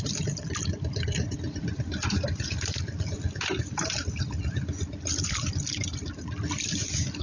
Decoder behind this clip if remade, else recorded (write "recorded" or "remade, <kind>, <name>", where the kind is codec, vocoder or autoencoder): recorded